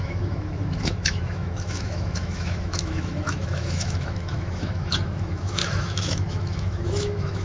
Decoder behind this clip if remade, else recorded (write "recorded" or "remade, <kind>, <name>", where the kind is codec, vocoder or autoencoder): remade, autoencoder, DAC-VAE